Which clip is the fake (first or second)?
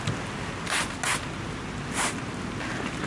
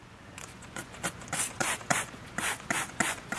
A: second